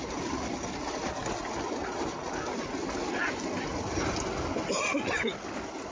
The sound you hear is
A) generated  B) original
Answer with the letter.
B